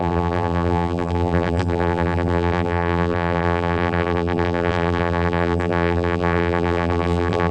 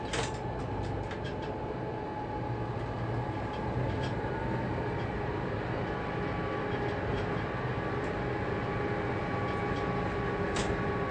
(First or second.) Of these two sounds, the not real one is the first